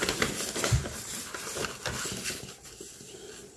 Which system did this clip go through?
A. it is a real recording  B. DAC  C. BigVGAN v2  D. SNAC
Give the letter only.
A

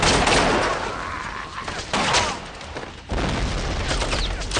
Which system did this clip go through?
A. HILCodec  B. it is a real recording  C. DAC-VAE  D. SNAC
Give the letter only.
B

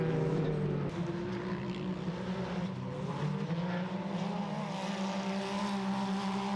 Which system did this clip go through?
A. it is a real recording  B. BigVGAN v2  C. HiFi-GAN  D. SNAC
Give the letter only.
A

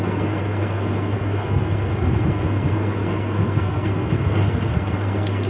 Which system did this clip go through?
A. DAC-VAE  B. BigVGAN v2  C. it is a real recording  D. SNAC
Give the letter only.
D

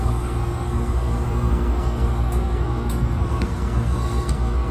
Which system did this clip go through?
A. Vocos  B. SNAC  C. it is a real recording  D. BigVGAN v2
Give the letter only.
B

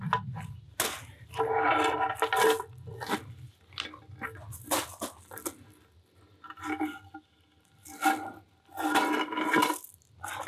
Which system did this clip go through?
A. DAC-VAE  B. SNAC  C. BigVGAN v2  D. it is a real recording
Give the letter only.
D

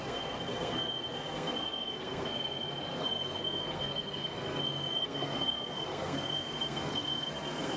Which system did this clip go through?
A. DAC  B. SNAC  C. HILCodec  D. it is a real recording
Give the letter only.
B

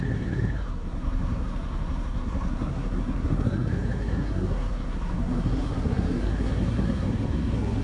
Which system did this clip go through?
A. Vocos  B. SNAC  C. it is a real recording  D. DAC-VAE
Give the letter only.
B